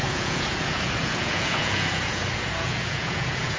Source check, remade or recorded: remade